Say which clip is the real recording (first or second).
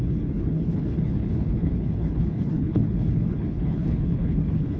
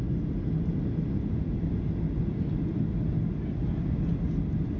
second